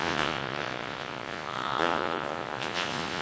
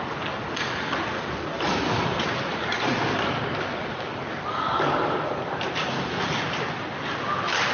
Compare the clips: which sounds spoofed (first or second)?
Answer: first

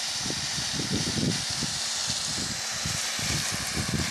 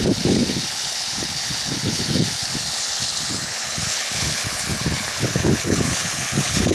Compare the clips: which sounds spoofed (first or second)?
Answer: second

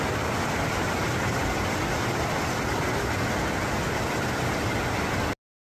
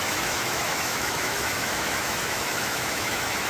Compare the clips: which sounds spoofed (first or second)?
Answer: second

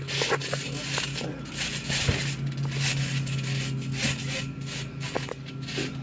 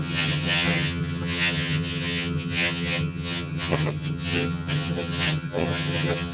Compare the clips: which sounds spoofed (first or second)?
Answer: second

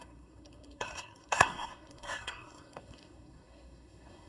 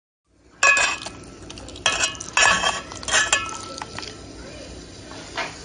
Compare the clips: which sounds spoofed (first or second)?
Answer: first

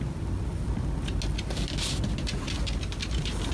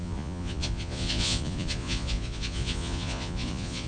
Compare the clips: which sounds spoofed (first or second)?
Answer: second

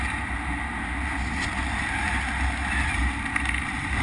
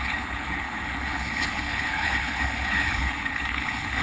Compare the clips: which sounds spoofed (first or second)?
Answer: second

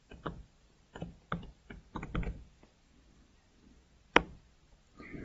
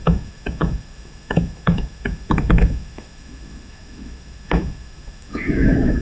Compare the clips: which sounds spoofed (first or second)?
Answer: second